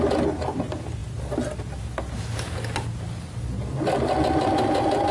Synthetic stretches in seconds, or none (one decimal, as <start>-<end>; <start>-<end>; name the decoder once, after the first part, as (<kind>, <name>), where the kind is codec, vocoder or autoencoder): none